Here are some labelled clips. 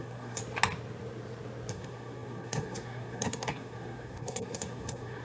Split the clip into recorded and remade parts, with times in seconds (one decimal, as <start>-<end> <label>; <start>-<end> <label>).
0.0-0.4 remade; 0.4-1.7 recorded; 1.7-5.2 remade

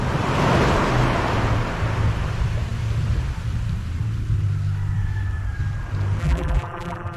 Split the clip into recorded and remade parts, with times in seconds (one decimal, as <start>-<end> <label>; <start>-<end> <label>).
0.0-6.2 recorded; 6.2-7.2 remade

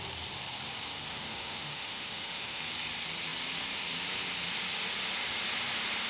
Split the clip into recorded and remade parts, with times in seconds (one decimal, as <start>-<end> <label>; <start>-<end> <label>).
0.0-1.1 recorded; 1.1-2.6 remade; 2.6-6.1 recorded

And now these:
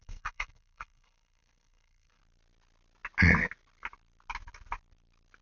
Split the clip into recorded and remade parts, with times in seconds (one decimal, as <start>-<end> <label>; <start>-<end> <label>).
0.0-2.2 remade; 2.2-5.4 recorded